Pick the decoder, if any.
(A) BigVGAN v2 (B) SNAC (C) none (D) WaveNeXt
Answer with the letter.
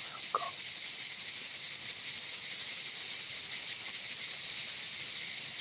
C